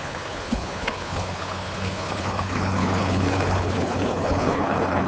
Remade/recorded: remade